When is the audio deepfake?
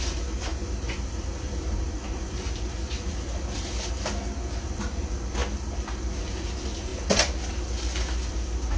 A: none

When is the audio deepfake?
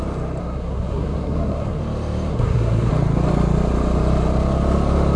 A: 0.4-1.8 (codec, SNAC); 2.3-2.9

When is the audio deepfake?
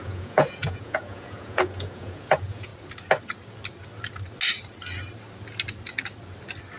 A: 0.0-2.7 (vocoder, Vocos)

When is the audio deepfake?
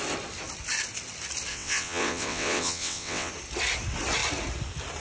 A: 1.5-3.3 (vocoder, WaveNeXt)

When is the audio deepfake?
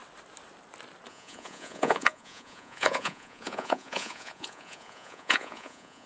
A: 1.1-6.1 (vocoder, Vocos)